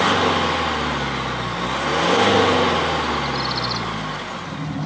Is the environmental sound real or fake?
real